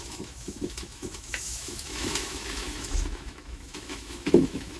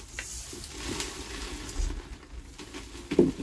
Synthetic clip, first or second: first